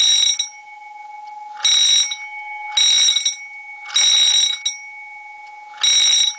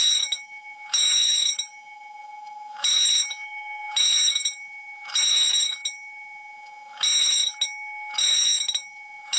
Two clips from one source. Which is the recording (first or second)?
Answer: first